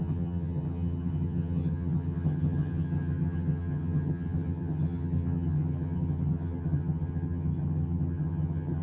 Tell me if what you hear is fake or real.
fake